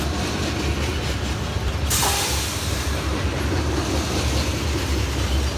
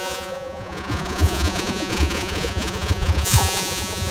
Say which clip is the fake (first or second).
second